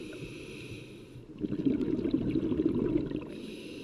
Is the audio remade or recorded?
recorded